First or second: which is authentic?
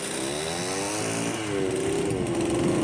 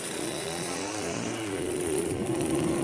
first